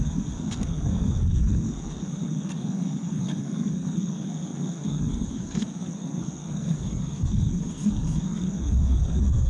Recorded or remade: remade